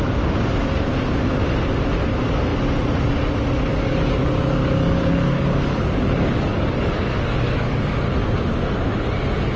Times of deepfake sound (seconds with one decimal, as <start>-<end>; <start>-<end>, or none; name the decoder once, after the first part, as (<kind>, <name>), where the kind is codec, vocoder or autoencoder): 3.7-7.9 (codec, DAC)